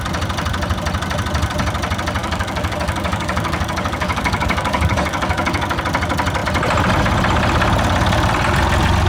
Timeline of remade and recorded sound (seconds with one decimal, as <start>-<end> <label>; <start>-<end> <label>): 0.0-2.2 recorded; 2.2-5.8 remade; 5.8-9.1 recorded